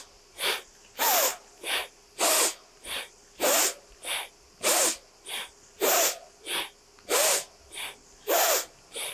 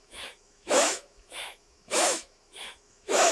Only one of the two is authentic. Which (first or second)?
first